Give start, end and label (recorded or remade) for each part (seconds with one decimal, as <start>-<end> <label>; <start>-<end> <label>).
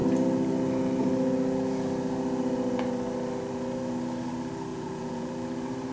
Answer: 0.0-4.7 recorded; 4.7-5.3 remade; 5.3-5.9 recorded